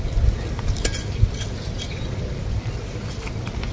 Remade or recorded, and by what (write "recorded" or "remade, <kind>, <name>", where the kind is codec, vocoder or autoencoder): recorded